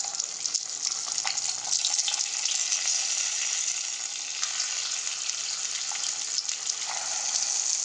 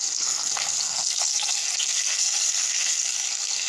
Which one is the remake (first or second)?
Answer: second